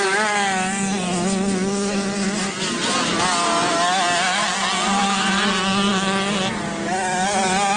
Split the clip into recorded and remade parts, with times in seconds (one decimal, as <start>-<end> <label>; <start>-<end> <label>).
0.0-7.8 recorded